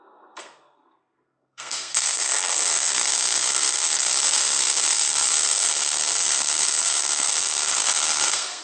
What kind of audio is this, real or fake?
fake